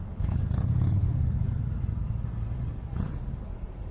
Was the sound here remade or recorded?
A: remade